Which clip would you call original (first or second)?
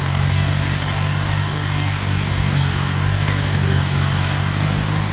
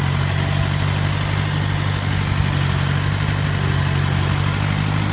second